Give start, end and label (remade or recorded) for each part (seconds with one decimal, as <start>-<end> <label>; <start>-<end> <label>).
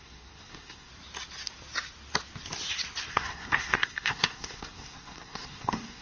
0.0-0.9 remade; 0.9-3.1 recorded; 3.1-6.0 remade